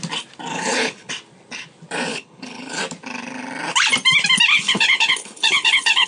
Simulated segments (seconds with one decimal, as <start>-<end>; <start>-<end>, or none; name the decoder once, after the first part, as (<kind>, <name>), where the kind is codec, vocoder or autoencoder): 0.5-1.1 (codec, HILCodec); 2.1-2.8; 4.5-6.1